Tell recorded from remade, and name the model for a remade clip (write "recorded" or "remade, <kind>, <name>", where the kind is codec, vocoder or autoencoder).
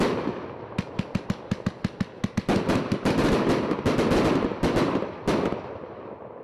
recorded